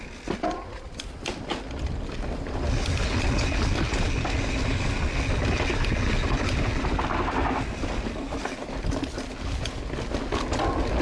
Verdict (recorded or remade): recorded